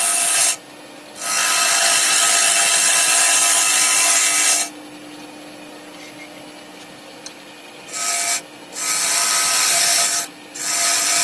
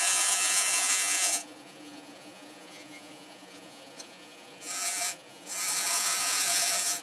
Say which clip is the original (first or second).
first